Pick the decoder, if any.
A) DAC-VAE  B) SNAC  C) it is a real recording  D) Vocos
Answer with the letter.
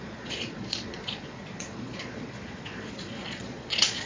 D